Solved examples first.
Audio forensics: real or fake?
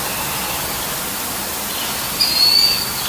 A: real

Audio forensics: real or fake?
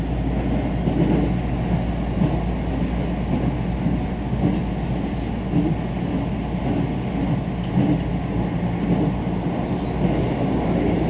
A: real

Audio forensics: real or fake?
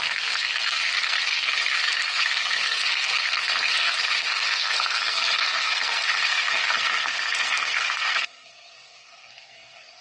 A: fake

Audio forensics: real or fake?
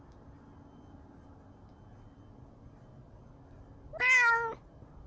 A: real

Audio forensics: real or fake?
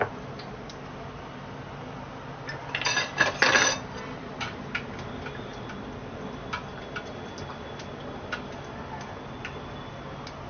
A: real